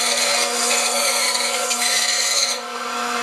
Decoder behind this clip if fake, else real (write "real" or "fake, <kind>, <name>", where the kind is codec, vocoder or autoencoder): fake, codec, SNAC